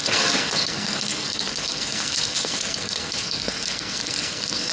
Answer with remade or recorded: remade